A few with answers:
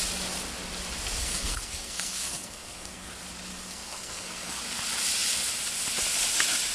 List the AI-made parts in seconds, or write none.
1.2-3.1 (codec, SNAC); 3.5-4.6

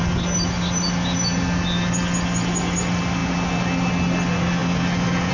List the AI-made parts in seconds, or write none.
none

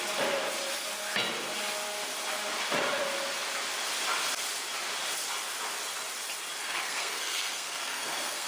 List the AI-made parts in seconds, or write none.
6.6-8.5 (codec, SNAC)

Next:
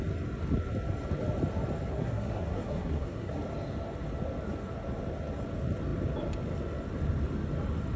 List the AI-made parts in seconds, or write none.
1.9-3.3 (codec, SNAC)

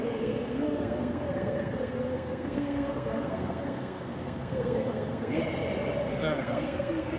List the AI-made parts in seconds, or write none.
0.0-5.4 (codec, SNAC); 6.1-7.2

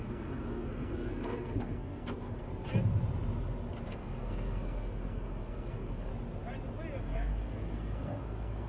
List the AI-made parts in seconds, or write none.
0.0-2.5 (codec, SNAC); 3.9-6.1; 7.0-8.7

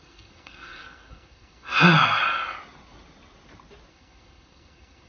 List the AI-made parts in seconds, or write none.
0.0-2.2 (codec, SNAC); 3.9-5.1

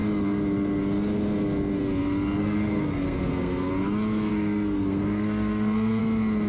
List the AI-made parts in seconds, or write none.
2.4-3.7 (codec, SNAC); 4.3-6.0